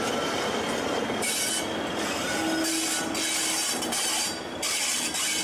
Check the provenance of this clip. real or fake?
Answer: real